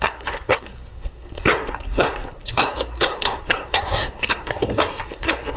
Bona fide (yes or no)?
no